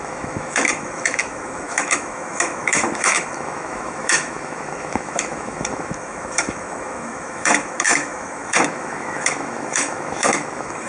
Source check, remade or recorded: remade